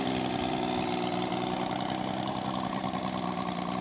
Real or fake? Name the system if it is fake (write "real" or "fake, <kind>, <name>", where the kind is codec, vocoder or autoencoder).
real